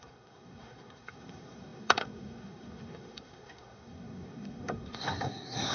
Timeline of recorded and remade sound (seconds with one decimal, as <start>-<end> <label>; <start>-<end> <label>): 0.0-5.7 remade